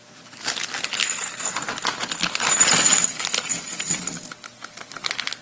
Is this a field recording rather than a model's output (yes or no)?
yes